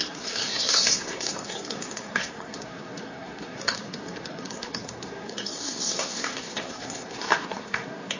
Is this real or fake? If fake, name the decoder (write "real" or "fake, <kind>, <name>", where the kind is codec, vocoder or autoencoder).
fake, codec, SNAC